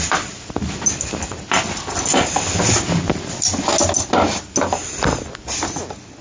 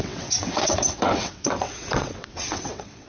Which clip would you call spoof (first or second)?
second